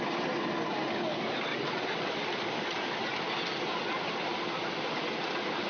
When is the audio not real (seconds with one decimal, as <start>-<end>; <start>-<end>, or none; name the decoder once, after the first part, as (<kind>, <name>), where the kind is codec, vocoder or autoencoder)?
1.5-2.1 (vocoder, WaveNeXt)